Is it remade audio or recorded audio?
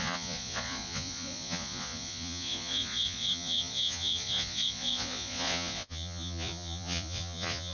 remade